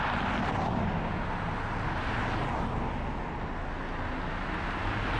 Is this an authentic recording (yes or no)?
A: yes